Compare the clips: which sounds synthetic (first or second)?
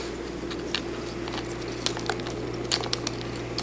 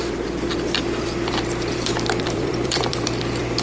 second